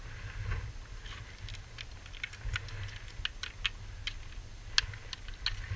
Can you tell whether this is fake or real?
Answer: real